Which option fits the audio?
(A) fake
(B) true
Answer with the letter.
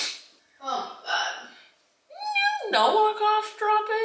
B